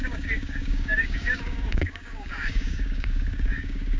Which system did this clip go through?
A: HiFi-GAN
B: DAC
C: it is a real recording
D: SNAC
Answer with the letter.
B